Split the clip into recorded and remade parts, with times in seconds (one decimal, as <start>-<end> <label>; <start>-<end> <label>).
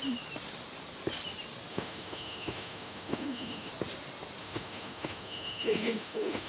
0.0-1.7 recorded; 1.7-3.7 remade; 3.7-4.4 recorded; 4.4-6.5 remade